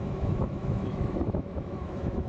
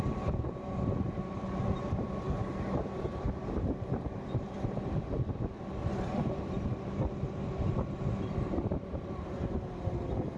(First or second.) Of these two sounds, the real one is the second